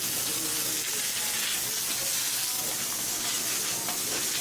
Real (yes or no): yes